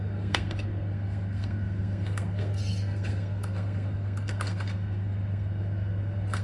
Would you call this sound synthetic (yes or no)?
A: yes